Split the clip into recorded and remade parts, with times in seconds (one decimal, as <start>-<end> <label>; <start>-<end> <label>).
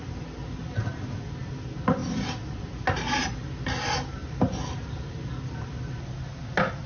0.0-6.9 recorded